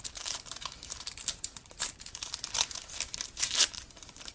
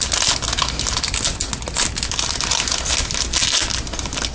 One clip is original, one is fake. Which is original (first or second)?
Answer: second